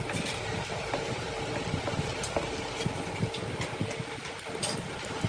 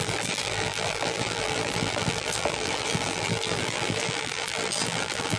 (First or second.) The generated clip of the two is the second